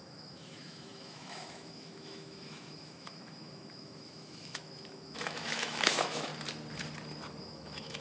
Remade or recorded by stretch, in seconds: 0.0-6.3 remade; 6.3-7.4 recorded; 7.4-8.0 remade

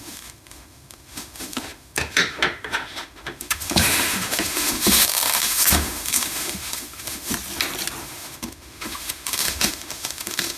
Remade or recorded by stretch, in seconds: 0.0-7.3 remade; 7.3-8.0 recorded; 8.0-10.6 remade

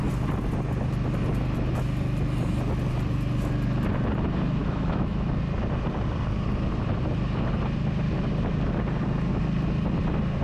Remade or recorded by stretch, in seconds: 0.0-4.6 recorded; 4.6-5.3 remade; 5.3-10.4 recorded

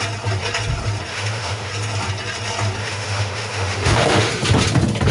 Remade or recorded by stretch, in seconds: 0.0-1.1 recorded; 1.1-1.7 remade; 1.7-2.8 recorded; 2.8-4.3 remade; 4.3-5.1 recorded

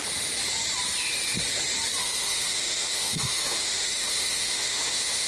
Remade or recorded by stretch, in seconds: 0.0-2.0 recorded; 2.0-5.3 remade

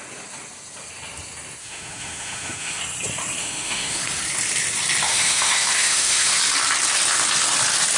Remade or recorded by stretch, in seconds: 0.0-1.6 recorded; 1.6-2.8 remade; 2.8-3.4 recorded; 3.4-4.0 remade; 4.0-5.1 recorded; 5.1-6.4 remade; 6.4-8.0 recorded

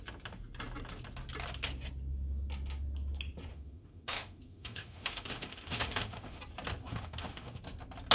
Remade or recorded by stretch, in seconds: 0.0-3.5 recorded; 3.5-6.4 remade; 6.4-6.9 recorded; 6.9-7.6 remade; 7.6-8.1 recorded

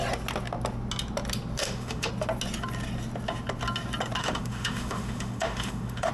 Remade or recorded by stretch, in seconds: 0.0-1.6 recorded; 1.6-2.1 remade; 2.1-4.2 recorded; 4.2-6.1 remade